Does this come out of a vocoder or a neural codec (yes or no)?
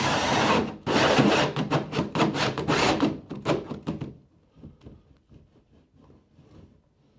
no